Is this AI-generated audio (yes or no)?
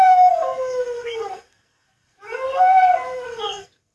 yes